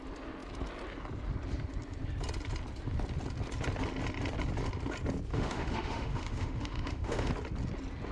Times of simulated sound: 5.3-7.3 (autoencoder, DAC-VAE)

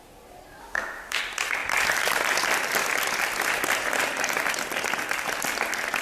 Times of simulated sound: 0.6-1.2 (autoencoder, DAC-VAE)

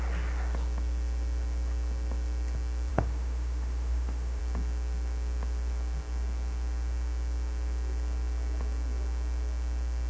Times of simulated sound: 2.9-4.4 (autoencoder, DAC-VAE)

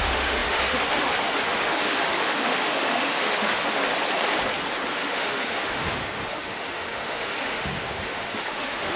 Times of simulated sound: 0.0-3.8 (autoencoder, DAC-VAE); 4.9-9.0